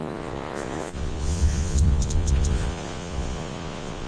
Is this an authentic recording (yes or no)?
no